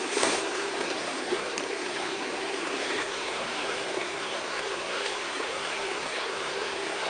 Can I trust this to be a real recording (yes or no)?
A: no